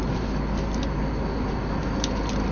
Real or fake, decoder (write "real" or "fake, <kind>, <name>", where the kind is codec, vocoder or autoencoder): real